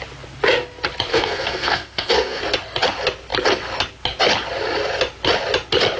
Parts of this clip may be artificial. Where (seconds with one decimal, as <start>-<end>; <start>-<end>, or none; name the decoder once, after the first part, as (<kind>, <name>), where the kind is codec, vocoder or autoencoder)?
1.1-2.4 (codec, SNAC)